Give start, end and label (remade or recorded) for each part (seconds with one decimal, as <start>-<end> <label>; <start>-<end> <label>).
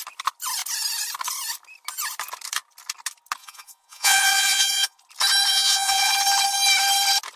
0.0-3.4 recorded; 3.4-5.0 remade; 5.0-5.5 recorded; 5.5-6.1 remade; 6.1-7.4 recorded